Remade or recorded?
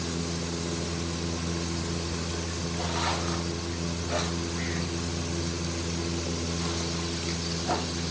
recorded